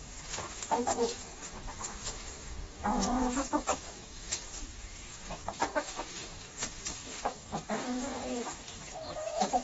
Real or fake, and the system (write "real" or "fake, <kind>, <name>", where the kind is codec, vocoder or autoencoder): fake, codec, DAC